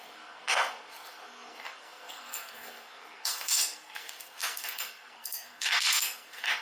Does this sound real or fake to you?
fake